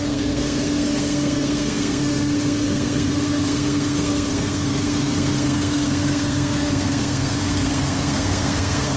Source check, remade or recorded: remade